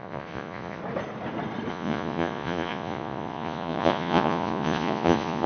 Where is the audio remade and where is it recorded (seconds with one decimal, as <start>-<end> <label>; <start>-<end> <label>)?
0.0-0.8 remade; 0.8-1.7 recorded; 1.7-5.5 remade